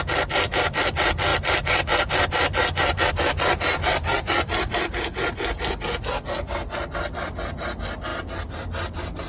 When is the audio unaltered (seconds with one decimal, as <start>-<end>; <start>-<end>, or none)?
0.0-9.3